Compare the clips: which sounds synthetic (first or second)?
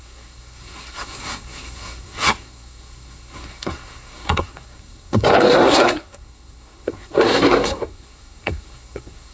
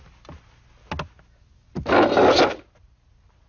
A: first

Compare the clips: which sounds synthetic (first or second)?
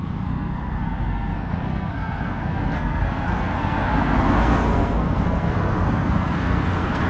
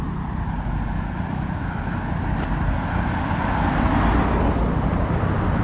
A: first